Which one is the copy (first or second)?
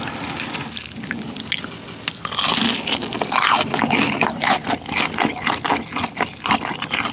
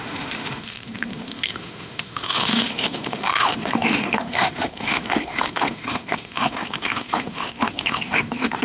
second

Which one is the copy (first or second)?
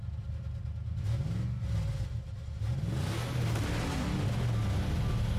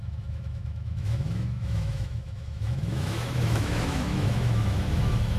second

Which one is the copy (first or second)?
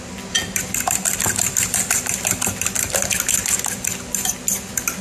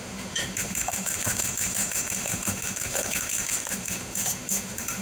second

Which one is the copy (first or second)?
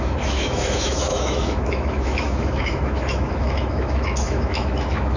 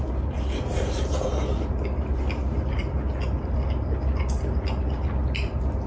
first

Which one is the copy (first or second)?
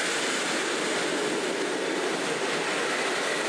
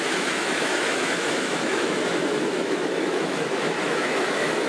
second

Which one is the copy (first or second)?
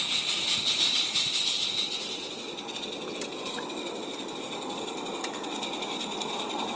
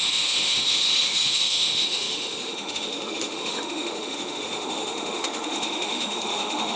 second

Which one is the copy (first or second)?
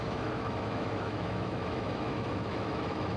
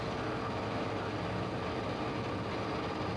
first